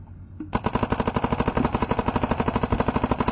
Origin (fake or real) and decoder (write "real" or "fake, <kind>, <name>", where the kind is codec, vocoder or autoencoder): fake, vocoder, BigVGAN v2